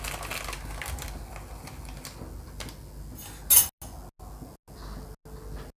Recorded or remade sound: recorded